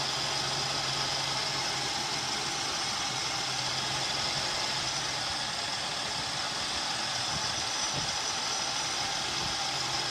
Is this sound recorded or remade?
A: recorded